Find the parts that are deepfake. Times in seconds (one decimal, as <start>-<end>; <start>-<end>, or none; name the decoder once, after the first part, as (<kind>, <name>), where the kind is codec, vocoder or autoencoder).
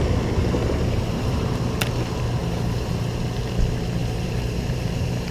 0.4-1.4 (vocoder, BigVGAN v2); 2.4-3.1; 4.0-5.3